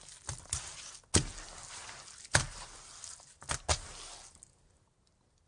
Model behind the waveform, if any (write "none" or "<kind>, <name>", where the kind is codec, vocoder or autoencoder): none